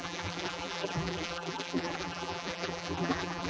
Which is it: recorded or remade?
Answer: remade